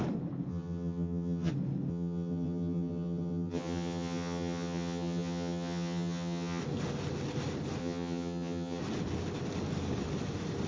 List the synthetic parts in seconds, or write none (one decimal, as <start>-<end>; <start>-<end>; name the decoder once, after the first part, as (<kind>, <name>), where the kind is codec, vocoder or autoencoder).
0.5-1.5 (vocoder, HiFi-GAN); 1.9-6.6; 7.8-8.8